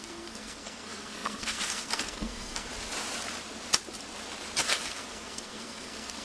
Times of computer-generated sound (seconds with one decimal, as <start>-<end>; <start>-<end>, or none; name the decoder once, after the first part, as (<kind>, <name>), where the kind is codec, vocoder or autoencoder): 0.0-2.7 (codec, SNAC); 4.6-6.2